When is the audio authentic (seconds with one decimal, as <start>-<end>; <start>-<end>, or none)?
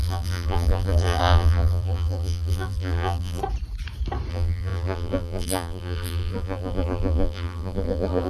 3.4-4.3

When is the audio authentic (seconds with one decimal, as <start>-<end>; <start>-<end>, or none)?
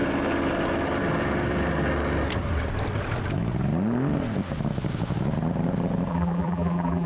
0.0-6.1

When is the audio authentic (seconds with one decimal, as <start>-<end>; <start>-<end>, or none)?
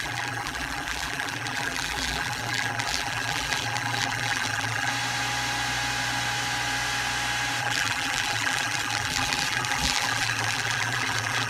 4.9-7.6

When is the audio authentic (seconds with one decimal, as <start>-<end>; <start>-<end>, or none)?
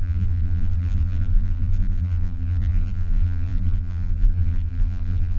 none